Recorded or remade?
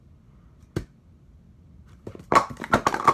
recorded